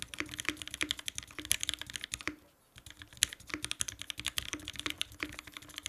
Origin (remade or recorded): recorded